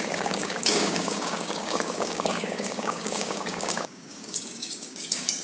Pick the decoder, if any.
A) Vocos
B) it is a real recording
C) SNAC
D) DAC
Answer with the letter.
D